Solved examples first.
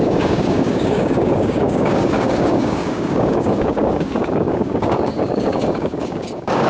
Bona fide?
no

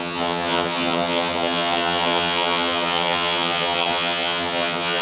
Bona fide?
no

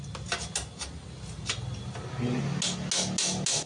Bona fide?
yes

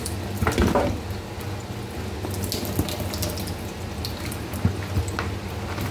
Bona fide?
yes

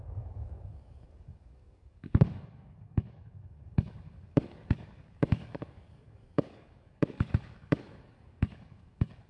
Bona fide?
no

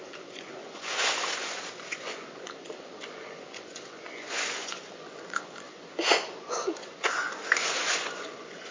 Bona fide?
no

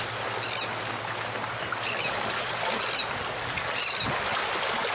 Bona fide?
yes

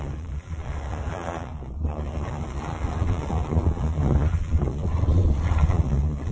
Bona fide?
no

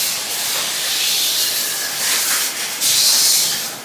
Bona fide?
yes